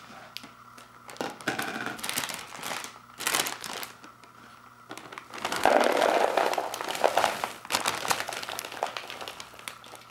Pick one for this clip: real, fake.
real